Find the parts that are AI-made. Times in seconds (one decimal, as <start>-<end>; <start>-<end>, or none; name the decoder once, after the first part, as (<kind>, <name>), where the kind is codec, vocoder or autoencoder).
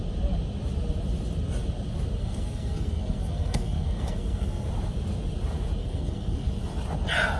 2.2-4.7 (codec, SNAC); 5.8-6.5